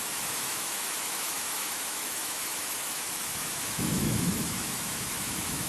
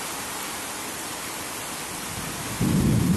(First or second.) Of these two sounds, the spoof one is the first